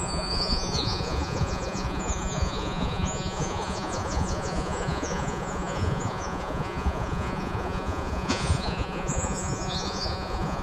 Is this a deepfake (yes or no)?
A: yes